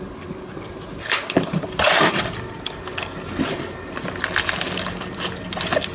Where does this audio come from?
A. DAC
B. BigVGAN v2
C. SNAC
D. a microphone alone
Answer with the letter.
D